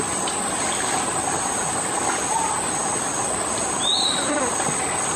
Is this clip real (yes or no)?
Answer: yes